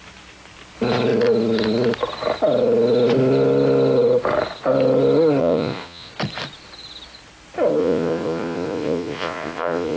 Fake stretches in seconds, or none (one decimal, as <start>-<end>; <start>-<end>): 5.4-6.1; 7.8-10.0